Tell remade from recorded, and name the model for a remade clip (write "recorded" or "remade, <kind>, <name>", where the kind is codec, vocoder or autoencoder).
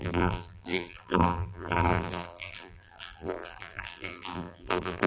remade, vocoder, BigVGAN v2